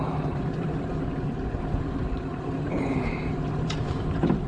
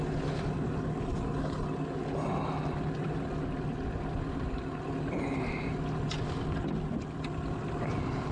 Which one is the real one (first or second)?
second